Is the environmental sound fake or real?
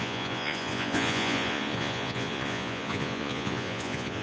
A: fake